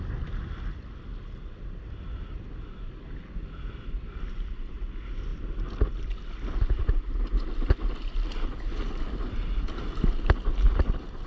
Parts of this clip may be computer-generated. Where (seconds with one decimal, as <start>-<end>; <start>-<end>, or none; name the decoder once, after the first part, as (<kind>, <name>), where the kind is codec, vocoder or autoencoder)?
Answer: none